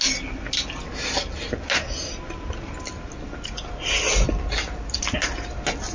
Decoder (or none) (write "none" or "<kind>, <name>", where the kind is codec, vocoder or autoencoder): none